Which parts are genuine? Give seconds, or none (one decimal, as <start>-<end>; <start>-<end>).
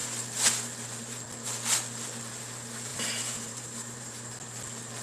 0.0-2.9; 4.3-5.0